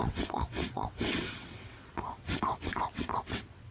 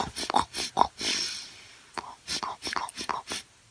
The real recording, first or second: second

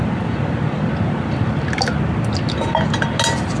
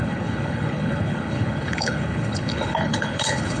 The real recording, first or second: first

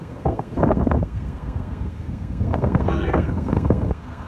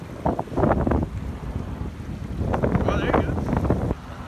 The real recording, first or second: second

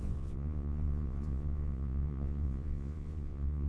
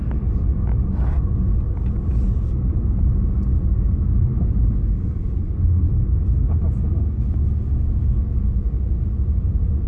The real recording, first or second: second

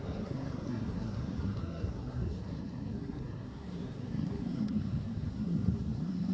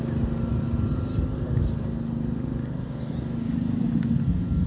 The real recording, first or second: second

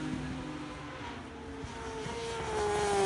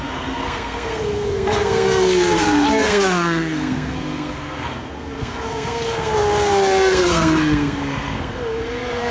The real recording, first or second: first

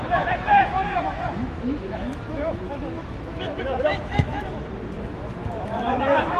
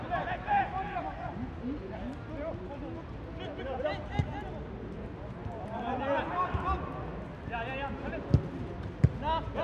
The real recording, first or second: second